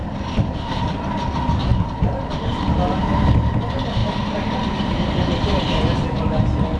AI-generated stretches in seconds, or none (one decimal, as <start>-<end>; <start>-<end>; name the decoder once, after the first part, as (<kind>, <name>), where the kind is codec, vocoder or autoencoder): 0.0-0.8 (vocoder, BigVGAN v2); 1.7-2.7; 4.0-5.1